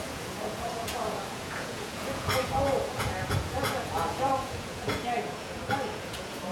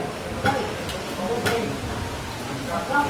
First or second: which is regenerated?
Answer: first